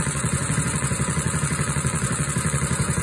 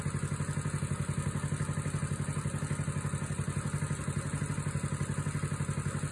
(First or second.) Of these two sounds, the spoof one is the first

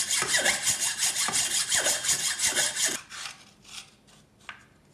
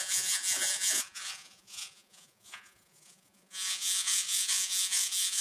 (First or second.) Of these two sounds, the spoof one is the second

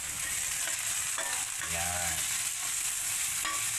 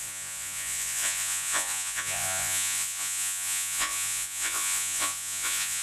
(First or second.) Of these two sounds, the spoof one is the second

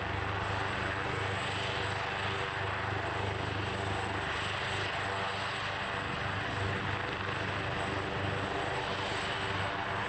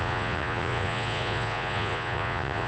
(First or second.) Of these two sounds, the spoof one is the second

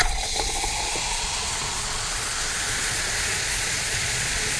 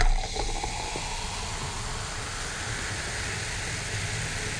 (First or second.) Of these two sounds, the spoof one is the first